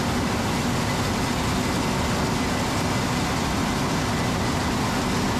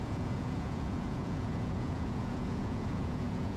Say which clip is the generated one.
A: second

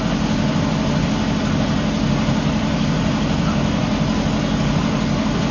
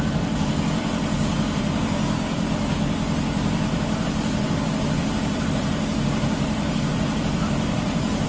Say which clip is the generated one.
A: second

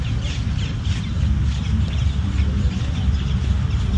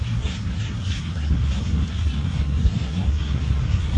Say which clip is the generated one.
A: second